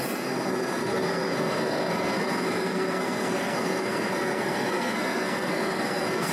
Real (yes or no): no